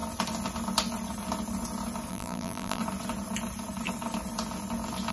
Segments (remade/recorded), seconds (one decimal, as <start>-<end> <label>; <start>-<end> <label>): 0.0-2.1 recorded; 2.1-2.8 remade; 2.8-5.1 recorded